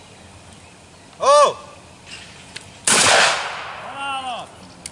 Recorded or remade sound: recorded